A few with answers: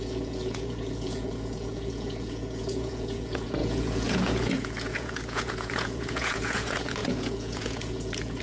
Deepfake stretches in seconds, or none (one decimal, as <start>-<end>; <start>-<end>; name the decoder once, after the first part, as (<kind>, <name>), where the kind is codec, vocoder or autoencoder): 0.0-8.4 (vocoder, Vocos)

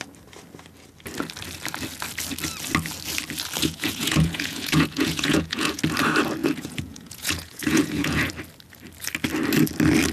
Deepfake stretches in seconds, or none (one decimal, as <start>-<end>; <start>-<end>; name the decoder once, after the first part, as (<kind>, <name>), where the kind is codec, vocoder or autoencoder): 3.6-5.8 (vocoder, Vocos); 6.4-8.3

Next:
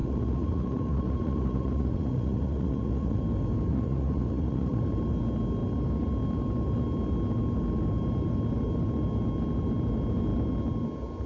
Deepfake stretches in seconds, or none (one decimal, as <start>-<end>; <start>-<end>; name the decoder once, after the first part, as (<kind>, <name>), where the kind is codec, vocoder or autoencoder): 0.0-3.2 (vocoder, Vocos); 3.7-4.8

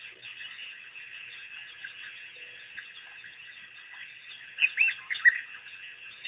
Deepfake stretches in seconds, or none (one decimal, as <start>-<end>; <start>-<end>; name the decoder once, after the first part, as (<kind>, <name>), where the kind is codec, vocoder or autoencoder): 3.4-4.3 (vocoder, Vocos)